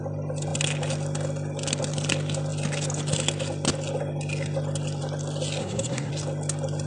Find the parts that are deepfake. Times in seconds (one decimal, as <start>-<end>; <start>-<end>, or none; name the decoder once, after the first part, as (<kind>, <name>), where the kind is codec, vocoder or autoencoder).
5.6-6.1 (codec, SNAC)